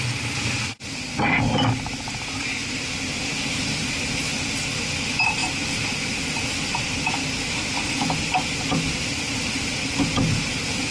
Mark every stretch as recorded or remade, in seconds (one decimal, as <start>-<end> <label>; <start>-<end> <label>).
0.0-10.9 recorded